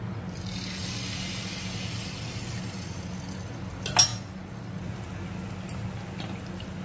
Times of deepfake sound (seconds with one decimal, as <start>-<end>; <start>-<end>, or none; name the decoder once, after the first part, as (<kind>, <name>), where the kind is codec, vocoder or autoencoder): none

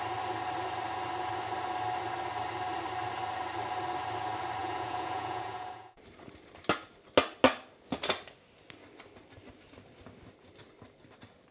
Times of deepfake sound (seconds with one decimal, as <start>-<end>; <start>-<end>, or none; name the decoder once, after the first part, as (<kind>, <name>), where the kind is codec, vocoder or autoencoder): 4.6-6.0 (vocoder, Vocos)

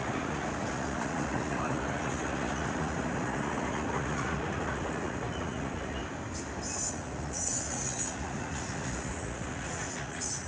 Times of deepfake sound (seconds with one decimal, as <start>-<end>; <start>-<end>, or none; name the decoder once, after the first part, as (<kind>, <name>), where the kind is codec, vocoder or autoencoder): 0.0-6.0 (vocoder, Vocos); 6.9-10.5

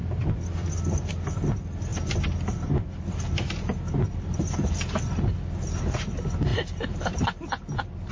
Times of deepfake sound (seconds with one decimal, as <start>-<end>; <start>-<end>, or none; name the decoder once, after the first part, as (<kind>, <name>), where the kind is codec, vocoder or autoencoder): none

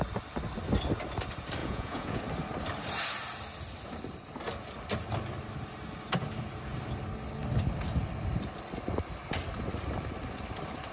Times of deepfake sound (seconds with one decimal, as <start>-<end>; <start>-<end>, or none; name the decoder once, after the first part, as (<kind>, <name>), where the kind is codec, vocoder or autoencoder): 1.6-2.2 (vocoder, Vocos)

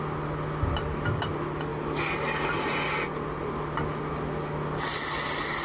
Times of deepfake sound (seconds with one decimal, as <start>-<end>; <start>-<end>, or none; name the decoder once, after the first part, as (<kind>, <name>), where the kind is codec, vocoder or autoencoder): none

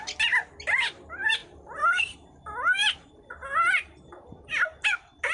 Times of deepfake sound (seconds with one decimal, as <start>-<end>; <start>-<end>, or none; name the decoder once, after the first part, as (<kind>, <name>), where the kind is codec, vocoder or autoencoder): none

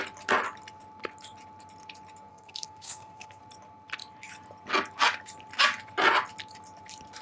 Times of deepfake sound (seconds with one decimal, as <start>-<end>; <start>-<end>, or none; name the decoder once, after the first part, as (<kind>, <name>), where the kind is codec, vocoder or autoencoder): 2.3-3.4 (codec, SNAC)